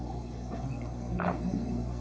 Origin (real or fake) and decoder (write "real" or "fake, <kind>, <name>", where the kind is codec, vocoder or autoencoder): fake, codec, SNAC